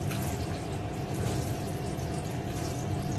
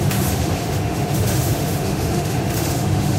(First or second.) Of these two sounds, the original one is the first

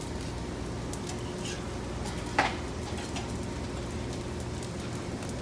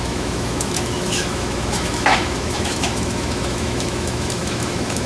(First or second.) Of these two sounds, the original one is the first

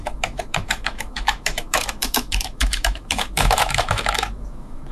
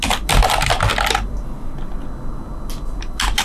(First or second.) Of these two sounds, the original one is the second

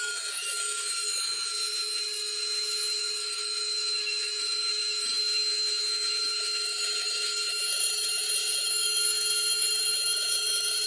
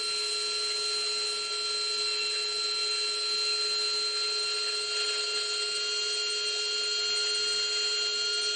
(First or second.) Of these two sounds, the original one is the second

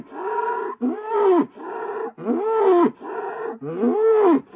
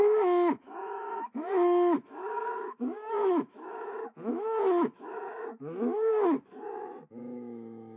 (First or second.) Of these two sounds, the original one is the first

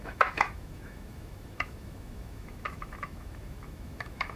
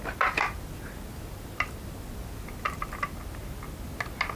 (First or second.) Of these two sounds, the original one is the second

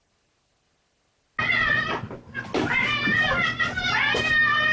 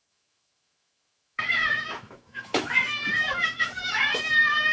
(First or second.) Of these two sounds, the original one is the first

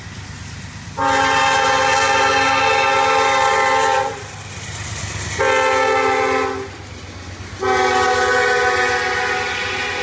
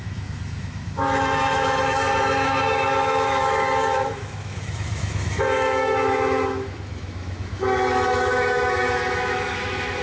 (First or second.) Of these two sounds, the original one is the first